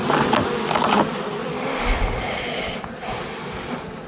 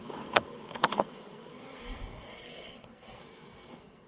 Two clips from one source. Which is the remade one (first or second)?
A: second